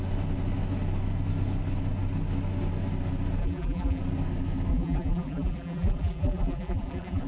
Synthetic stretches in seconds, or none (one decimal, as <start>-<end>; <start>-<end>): 3.4-4.0; 4.7-7.3

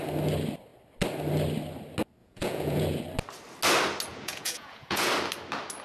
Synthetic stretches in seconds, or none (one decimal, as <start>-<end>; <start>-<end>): 2.2-3.0; 4.1-5.1